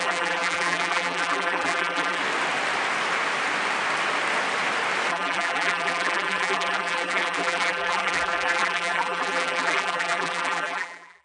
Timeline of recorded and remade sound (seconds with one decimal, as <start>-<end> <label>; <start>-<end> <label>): 0.0-2.2 remade; 2.2-5.1 recorded; 5.1-11.2 remade